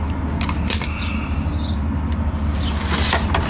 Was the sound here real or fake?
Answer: real